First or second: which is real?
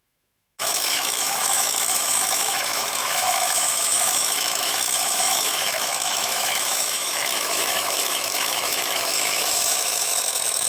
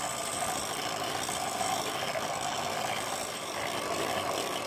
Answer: second